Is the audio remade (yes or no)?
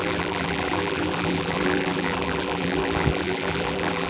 yes